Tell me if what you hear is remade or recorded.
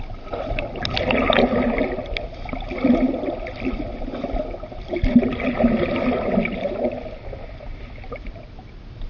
recorded